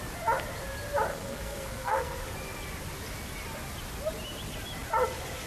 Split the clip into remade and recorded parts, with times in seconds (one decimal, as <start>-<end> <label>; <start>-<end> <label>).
0.0-1.1 recorded; 1.1-2.3 remade; 2.3-5.5 recorded